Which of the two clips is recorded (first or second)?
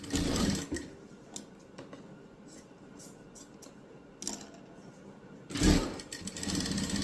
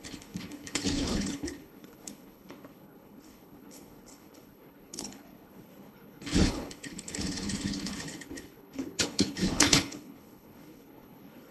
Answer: first